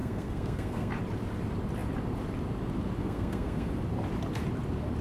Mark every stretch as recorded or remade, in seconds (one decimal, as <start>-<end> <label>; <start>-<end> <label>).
0.0-0.9 remade; 0.9-3.0 recorded; 3.0-3.7 remade; 3.7-5.0 recorded